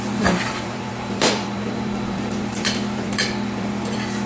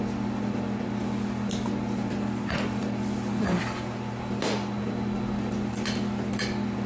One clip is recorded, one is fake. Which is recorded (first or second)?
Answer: second